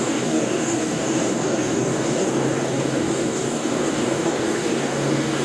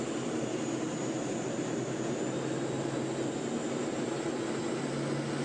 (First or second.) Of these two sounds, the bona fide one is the second